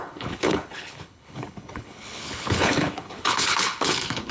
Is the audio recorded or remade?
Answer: remade